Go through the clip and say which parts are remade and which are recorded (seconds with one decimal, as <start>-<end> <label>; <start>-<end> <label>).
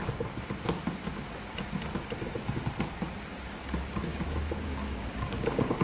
0.0-4.1 recorded; 4.1-5.8 remade